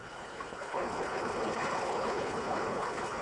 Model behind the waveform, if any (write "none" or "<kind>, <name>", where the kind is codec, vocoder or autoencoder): codec, HILCodec